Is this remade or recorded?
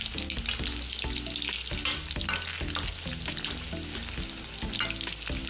recorded